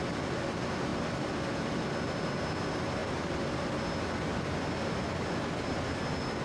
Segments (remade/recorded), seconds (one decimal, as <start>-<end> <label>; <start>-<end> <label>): 0.0-6.4 recorded